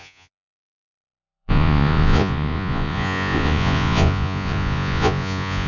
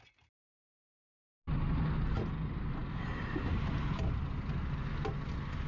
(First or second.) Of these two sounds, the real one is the second